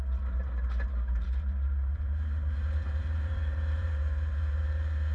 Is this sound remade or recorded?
remade